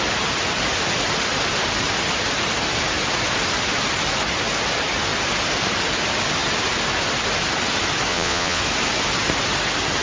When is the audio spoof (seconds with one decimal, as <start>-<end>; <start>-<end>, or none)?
8.1-8.6